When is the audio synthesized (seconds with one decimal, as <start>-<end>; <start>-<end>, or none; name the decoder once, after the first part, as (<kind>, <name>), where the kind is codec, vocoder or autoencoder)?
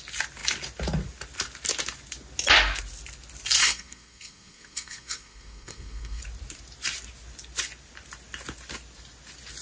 3.6-6.2 (codec, SNAC)